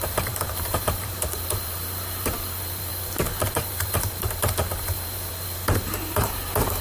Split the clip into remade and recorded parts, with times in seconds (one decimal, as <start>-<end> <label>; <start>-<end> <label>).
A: 0.0-6.8 remade